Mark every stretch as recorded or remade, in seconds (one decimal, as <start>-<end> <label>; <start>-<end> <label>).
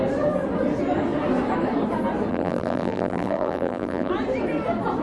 0.0-2.3 recorded; 2.3-4.1 remade; 4.1-5.0 recorded